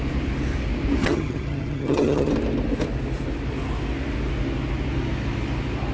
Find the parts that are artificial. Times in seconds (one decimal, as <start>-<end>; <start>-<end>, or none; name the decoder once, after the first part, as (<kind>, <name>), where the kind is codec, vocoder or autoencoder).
1.0-2.3 (vocoder, HiFi-GAN)